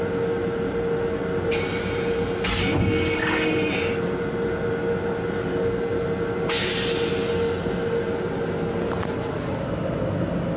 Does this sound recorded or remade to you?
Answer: recorded